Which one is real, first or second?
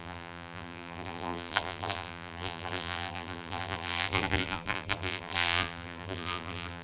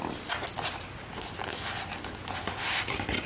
second